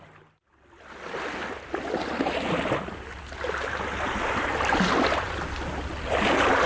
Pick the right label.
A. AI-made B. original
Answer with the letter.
B